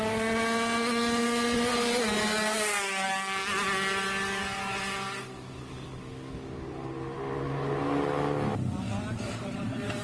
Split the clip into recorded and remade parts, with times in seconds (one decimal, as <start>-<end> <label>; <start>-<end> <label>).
0.0-10.0 recorded